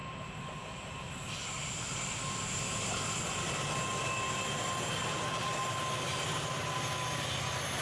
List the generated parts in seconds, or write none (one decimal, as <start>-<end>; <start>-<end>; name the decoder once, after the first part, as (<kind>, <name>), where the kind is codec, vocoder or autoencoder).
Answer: none